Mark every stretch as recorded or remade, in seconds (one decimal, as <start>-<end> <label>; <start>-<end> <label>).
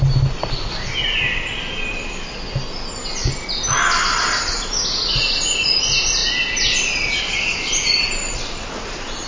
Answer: 0.0-9.3 recorded